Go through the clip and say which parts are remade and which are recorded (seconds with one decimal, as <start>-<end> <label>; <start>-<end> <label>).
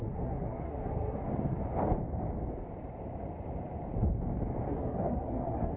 0.0-1.2 remade; 1.2-4.7 recorded; 4.7-5.8 remade